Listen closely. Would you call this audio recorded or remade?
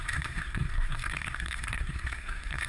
remade